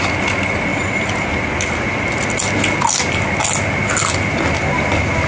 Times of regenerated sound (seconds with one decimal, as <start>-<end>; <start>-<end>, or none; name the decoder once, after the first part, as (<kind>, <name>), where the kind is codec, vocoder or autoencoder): none